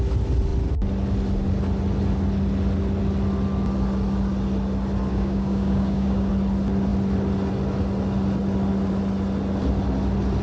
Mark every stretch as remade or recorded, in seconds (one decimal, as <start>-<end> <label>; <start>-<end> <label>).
0.0-5.1 recorded; 5.1-6.3 remade; 6.3-10.4 recorded